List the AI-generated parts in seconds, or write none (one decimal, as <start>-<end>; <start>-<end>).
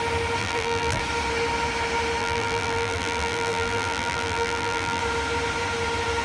0.4-1.0; 2.2-5.0